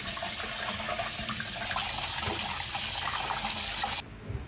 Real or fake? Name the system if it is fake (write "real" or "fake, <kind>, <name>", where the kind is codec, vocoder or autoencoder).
real